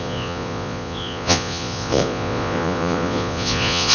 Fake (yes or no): yes